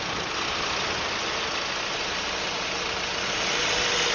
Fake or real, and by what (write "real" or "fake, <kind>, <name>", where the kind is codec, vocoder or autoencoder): real